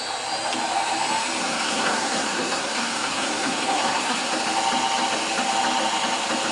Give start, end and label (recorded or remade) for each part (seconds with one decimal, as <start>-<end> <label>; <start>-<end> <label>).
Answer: 0.0-1.4 recorded; 1.4-4.3 remade; 4.3-6.5 recorded